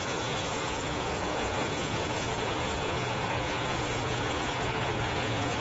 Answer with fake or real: fake